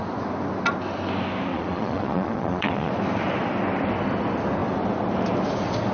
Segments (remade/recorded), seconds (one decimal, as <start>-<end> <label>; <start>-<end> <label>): 0.0-1.5 recorded; 1.5-2.9 remade; 2.9-5.9 recorded